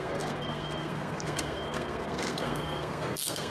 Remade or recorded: remade